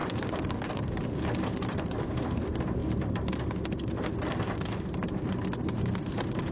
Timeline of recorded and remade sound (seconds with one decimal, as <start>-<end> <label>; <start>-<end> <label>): 0.0-1.0 remade; 1.0-6.5 recorded